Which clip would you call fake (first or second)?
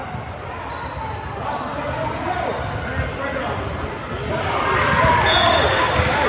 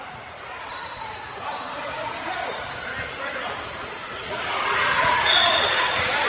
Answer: second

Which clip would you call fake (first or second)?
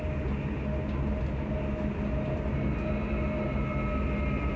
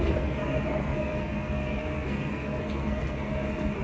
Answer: second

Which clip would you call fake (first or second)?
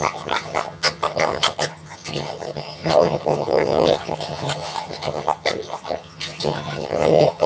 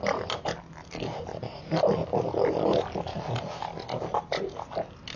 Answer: first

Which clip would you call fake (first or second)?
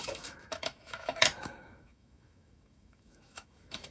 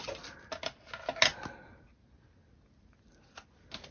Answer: first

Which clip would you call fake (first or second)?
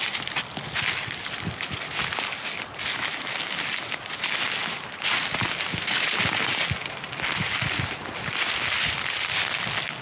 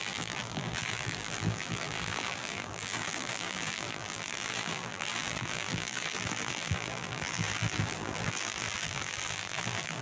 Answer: second